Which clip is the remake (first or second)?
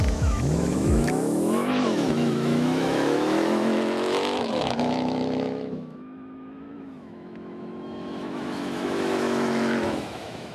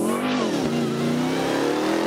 first